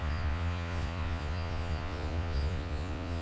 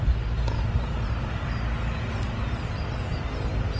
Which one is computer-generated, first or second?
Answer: first